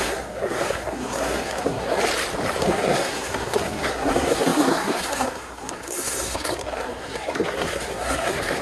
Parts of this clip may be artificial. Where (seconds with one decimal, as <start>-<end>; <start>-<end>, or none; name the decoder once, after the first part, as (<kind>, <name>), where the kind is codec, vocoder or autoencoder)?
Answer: 0.0-2.0 (codec, SNAC); 2.6-8.6